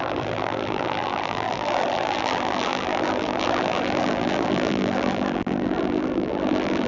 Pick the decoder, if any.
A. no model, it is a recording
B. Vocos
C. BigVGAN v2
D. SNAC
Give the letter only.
C